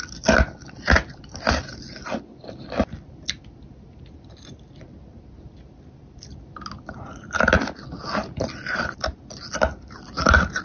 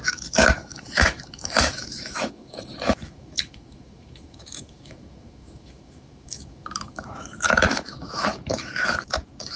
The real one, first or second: first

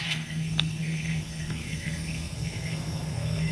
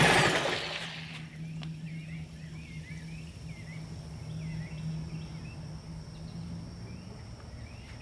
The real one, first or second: second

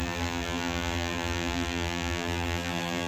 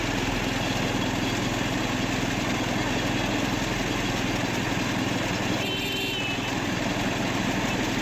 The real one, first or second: second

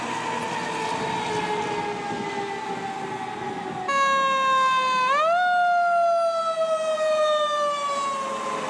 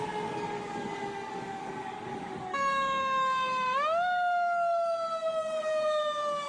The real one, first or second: first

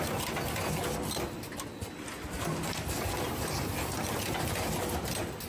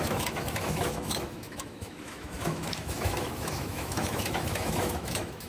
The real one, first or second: first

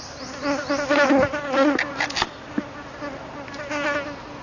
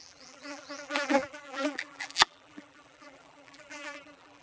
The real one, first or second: first